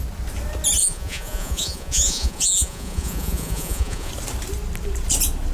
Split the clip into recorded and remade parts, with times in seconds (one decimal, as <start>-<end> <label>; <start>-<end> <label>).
0.0-0.8 recorded; 0.8-4.1 remade; 4.1-5.5 recorded